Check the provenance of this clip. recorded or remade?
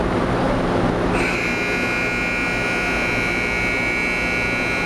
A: recorded